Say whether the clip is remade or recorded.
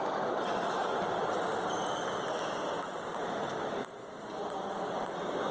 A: recorded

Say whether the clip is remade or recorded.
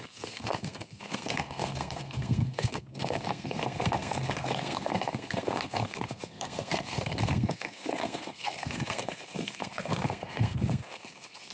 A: remade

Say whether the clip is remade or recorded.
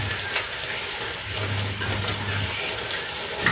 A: recorded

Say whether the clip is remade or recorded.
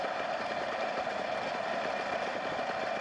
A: remade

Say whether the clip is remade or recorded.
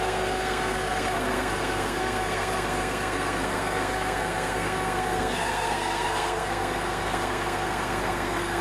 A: remade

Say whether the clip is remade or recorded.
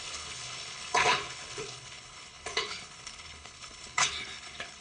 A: remade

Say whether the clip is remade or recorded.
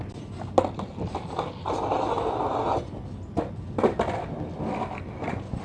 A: recorded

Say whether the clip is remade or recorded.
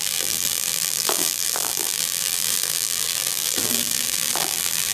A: remade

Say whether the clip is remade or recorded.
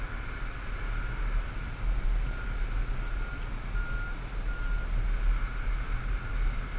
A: recorded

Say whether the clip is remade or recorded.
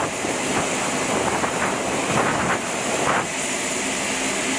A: recorded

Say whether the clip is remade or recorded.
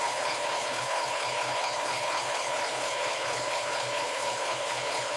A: remade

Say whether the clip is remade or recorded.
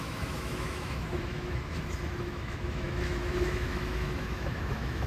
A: remade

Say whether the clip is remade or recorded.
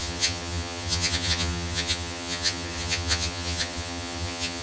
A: remade